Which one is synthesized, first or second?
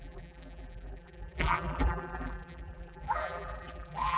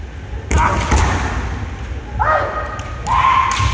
first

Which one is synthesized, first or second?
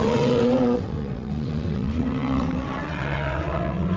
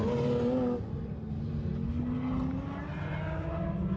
first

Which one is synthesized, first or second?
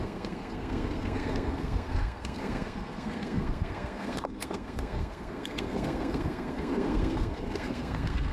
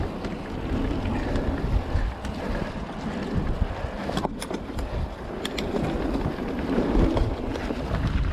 first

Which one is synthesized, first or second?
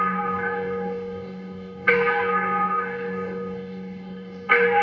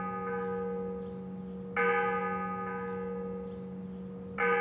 first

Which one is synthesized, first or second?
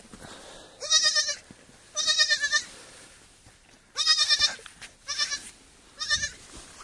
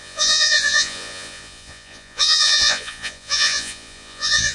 second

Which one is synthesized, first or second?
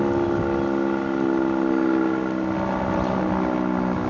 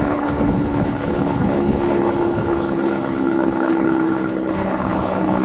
second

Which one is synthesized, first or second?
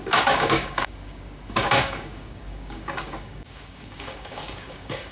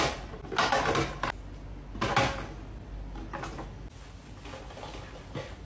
first